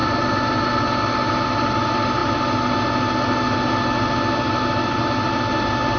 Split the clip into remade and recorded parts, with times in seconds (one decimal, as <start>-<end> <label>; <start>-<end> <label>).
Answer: 0.0-6.0 recorded